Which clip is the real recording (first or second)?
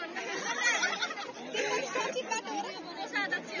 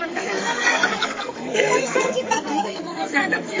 first